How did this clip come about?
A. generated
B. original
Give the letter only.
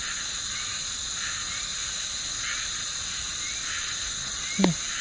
B